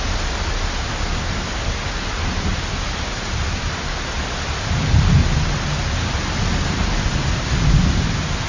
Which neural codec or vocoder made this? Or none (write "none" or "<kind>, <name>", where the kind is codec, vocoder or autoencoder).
none